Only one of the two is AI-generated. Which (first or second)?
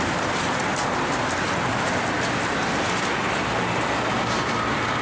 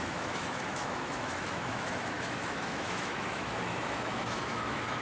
second